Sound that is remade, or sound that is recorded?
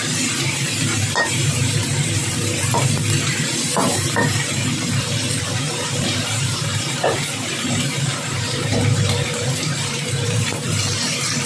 remade